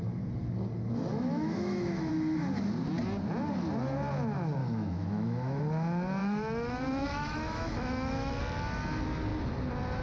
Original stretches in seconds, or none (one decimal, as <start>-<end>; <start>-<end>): 0.0-1.1; 2.1-4.6; 5.6-6.2; 8.4-10.0